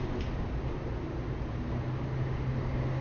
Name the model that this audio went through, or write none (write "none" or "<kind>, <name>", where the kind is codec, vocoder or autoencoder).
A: none